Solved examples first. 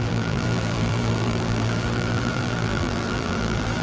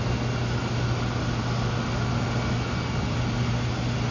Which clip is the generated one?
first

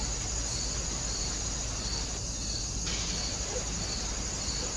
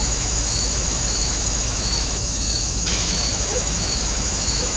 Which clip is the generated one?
second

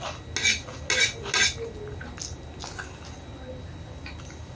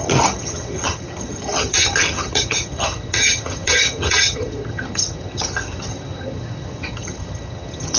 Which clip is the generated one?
second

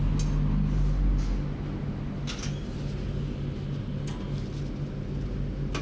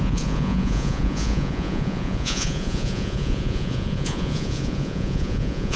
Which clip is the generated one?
second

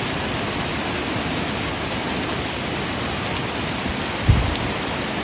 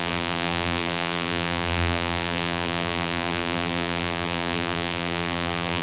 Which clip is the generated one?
second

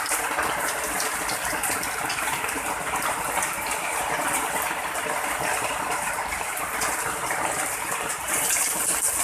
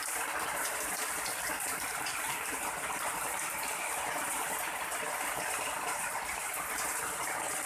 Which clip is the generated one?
second